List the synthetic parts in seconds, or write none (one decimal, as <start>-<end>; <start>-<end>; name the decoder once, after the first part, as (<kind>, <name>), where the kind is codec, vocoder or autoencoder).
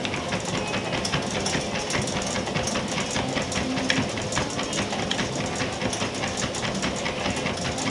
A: none